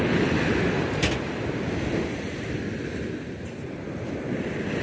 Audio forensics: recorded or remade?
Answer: recorded